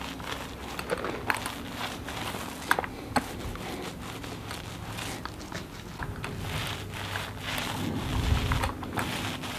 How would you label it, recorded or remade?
recorded